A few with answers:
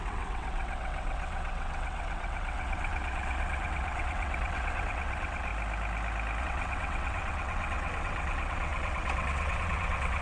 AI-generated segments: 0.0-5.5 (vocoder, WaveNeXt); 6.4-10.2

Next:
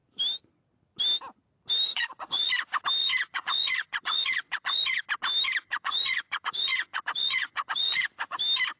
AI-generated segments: 1.9-2.5 (vocoder, Vocos); 3.0-5.0; 5.7-8.4

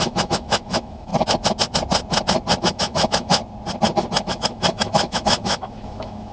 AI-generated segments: 0.0-1.1 (autoencoder, DAC-VAE); 2.6-3.4; 4.2-6.3

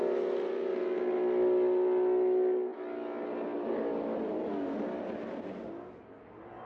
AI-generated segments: none